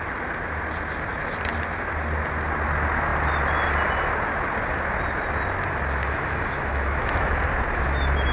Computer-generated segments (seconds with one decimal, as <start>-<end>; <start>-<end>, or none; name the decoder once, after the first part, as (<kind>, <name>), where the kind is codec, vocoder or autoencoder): 6.0-7.3 (autoencoder, DAC-VAE)